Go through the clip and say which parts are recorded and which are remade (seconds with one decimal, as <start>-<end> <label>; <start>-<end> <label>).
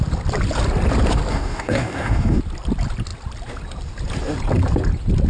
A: 0.0-1.3 recorded; 1.3-2.4 remade; 2.4-5.3 recorded